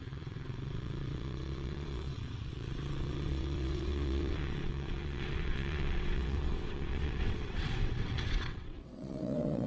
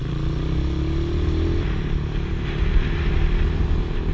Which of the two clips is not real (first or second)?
first